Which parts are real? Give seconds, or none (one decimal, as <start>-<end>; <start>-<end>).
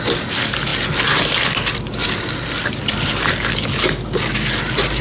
0.0-5.0